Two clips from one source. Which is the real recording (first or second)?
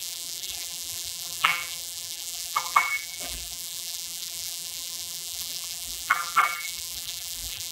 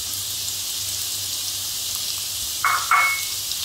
second